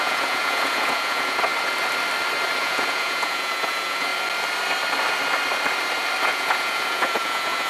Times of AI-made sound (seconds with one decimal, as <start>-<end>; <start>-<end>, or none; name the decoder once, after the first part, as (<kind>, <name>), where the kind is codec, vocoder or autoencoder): 0.0-1.5 (vocoder, Vocos); 2.6-4.1; 6.2-7.7